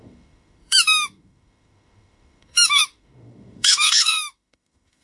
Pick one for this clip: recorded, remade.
remade